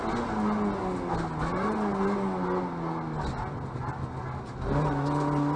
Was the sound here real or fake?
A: real